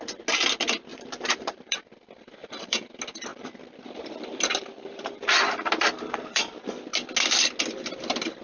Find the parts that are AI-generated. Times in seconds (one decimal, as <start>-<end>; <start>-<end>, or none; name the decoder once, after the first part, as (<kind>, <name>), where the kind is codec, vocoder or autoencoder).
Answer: 0.9-1.8 (vocoder, BigVGAN v2); 2.4-2.9; 3.3-6.7

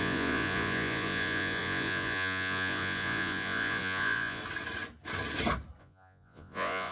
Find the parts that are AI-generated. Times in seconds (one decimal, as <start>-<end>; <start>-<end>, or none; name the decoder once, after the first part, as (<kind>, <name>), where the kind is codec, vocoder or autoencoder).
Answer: 0.0-4.4 (vocoder, Vocos); 5.8-6.9